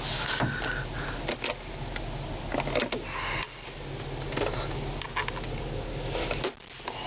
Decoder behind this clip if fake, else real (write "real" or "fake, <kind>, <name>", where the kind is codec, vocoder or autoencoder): real